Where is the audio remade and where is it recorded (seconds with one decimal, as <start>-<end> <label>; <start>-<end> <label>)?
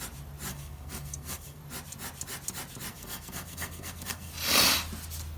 0.0-0.5 recorded; 0.5-1.6 remade; 1.6-2.9 recorded; 2.9-4.3 remade; 4.3-5.4 recorded